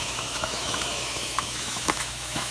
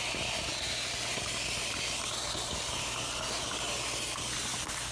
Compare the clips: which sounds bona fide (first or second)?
second